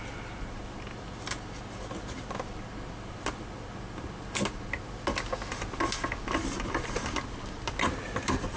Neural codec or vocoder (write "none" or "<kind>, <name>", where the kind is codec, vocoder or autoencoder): none